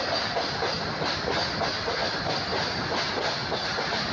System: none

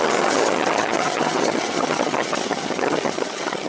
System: vocoder, HiFi-GAN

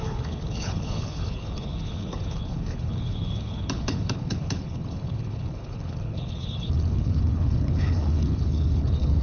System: codec, HILCodec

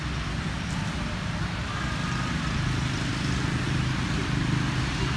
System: none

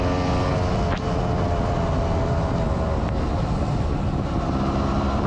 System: none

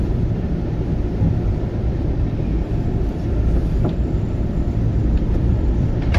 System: vocoder, BigVGAN v2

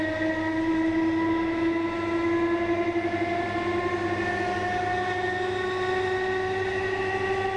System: none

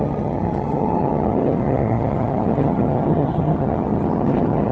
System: vocoder, HiFi-GAN